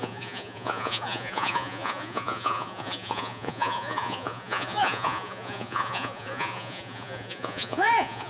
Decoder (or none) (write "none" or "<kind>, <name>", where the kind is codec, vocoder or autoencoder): vocoder, Vocos